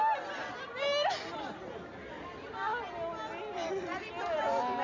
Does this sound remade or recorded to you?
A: recorded